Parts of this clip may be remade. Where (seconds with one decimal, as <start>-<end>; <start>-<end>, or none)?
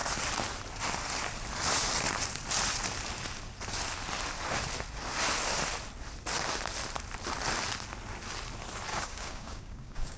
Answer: 8.9-10.2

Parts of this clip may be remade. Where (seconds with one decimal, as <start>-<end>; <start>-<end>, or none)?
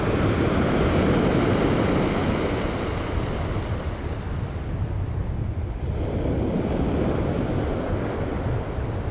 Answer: none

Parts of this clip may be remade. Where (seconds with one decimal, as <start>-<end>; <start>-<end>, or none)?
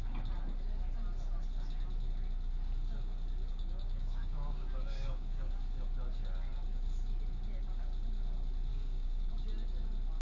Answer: 3.5-5.5; 8.7-9.3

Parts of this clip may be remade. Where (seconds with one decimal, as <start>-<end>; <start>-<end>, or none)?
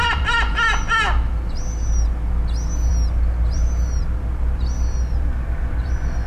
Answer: none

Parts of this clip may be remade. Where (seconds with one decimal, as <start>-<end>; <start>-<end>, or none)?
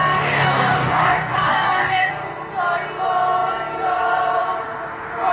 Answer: 0.0-2.1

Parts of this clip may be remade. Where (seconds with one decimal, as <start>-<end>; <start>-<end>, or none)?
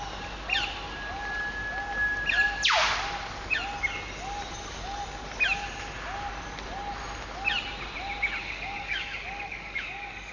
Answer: 8.4-10.3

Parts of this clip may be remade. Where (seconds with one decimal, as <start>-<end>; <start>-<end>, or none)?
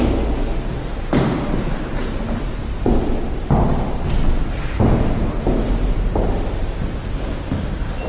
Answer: none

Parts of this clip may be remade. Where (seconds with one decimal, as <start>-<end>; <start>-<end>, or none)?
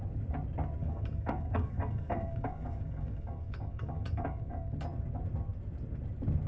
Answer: 0.8-4.7